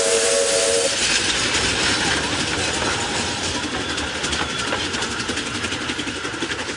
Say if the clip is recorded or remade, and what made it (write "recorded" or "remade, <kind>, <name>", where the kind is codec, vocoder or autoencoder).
recorded